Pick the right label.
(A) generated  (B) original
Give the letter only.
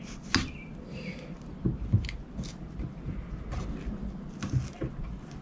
B